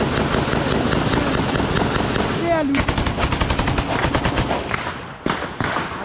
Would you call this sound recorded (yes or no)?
yes